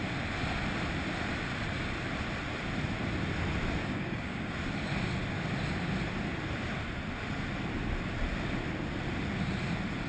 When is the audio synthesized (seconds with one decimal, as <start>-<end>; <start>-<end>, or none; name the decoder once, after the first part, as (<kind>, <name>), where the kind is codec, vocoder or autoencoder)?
3.8-4.5 (codec, DAC)